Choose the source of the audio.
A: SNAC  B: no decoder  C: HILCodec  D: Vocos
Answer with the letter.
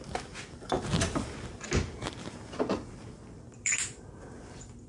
B